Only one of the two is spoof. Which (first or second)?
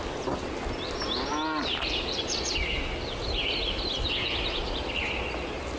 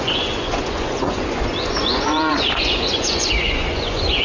second